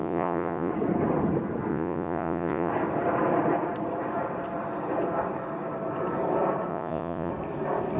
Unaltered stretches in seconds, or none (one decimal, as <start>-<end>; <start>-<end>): 0.7-1.7; 2.7-6.7; 7.3-8.0